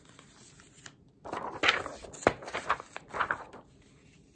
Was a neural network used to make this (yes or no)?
no